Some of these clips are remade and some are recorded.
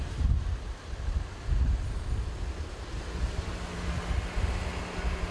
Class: recorded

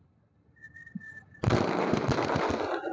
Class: recorded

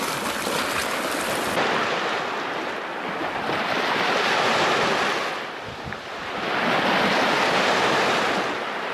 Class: recorded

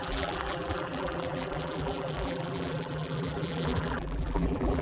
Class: remade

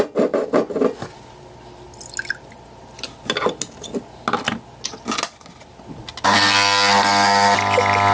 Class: recorded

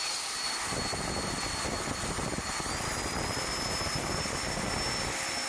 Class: recorded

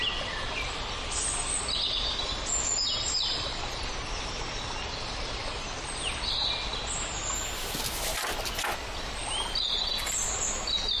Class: recorded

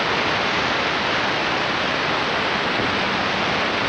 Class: recorded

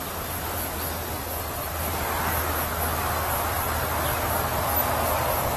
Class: recorded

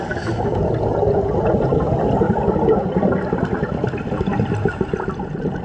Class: recorded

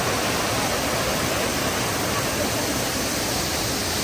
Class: recorded